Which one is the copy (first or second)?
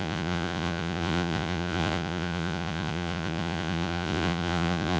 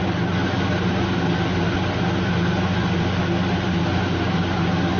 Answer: first